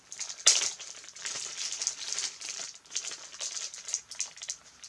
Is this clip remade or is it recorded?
recorded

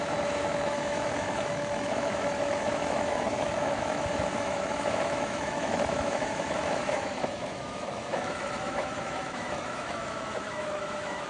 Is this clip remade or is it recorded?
remade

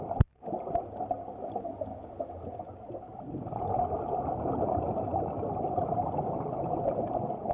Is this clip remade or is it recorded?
recorded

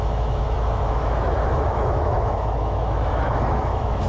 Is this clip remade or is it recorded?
remade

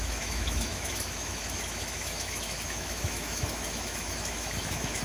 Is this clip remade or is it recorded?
remade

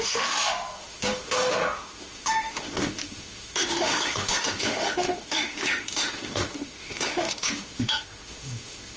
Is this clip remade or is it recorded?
remade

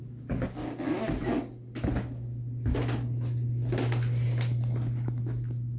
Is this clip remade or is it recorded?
recorded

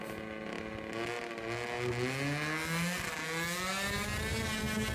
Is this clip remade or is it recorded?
recorded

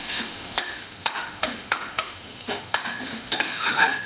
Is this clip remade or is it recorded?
remade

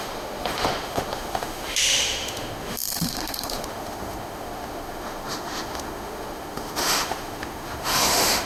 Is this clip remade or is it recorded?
remade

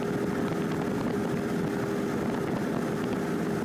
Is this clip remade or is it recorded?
recorded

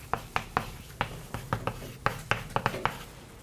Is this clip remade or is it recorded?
recorded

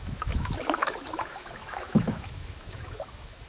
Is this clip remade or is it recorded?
remade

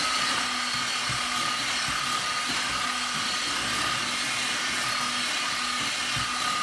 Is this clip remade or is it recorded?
recorded